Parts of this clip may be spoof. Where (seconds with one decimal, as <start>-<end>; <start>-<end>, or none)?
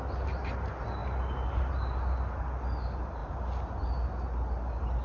none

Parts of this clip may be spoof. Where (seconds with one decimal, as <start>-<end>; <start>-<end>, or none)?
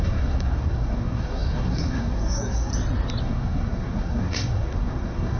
0.0-2.7; 3.2-5.4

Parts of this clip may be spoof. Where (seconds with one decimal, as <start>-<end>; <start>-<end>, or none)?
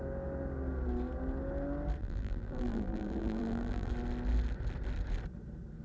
2.0-3.9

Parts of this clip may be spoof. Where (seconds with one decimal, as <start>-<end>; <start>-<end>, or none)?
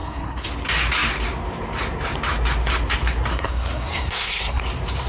0.0-0.5; 3.3-4.6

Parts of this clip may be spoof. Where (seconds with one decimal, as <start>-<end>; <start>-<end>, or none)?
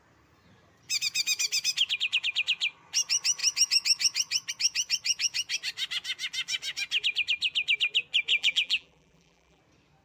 8.3-9.6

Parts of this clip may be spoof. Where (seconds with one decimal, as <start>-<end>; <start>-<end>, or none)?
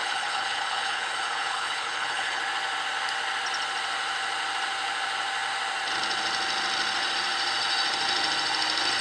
0.0-2.4